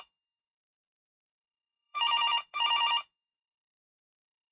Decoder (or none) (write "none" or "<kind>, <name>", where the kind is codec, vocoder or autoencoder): vocoder, Vocos